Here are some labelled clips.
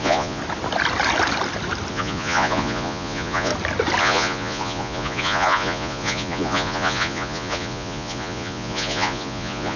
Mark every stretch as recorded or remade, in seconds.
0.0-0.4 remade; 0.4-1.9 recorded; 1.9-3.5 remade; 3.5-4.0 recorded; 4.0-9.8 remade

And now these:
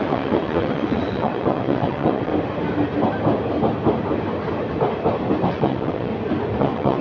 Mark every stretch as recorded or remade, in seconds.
0.0-2.3 remade; 2.3-5.5 recorded; 5.5-6.1 remade; 6.1-6.6 recorded; 6.6-7.0 remade

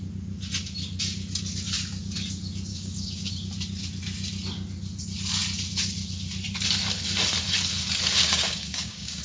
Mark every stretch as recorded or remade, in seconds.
0.0-2.7 recorded; 2.7-3.3 remade; 3.3-8.2 recorded; 8.2-9.2 remade